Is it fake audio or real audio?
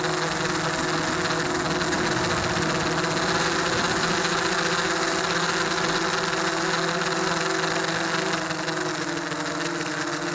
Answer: real